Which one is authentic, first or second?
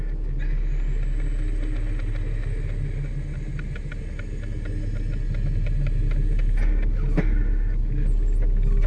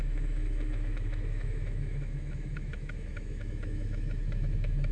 first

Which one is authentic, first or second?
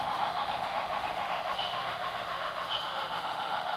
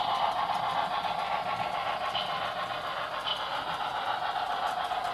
second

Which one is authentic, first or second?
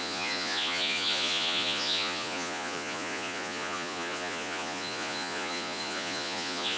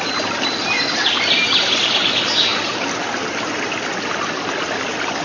second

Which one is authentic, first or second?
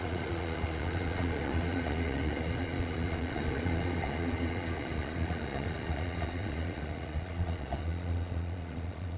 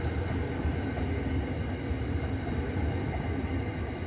second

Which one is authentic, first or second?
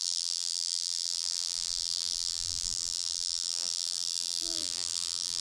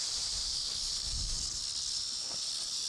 second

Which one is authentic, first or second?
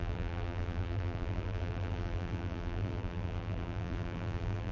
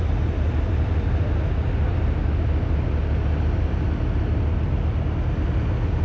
second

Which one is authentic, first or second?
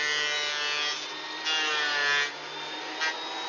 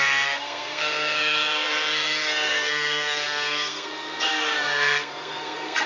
first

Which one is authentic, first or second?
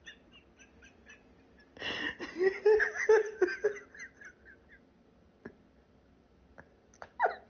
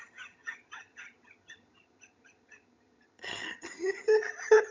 first